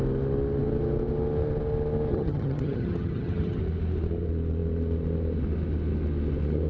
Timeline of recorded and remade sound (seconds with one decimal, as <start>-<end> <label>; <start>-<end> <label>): 0.0-2.1 recorded; 2.1-3.6 remade; 3.6-6.7 recorded